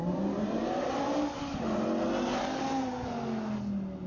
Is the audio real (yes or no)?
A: yes